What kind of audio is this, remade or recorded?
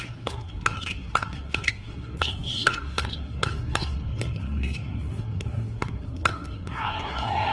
remade